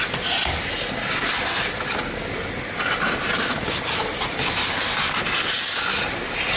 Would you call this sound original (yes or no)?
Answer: yes